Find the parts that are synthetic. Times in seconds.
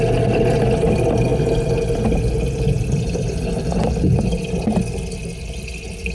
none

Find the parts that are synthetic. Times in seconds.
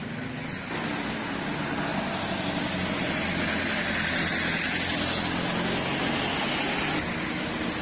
none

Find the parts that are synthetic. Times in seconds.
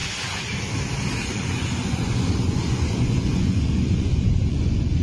1.3-5.0 (vocoder, Vocos)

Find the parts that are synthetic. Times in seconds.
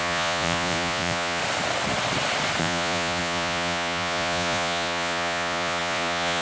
0.0-1.4 (vocoder, Vocos); 2.6-6.4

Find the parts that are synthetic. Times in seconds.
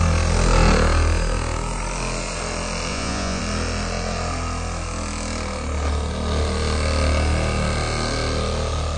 2.9-3.4 (vocoder, Vocos)